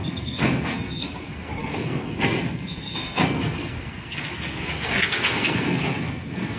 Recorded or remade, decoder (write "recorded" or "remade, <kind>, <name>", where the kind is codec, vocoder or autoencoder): remade, codec, SNAC